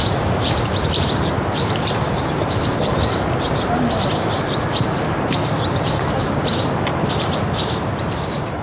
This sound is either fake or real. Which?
fake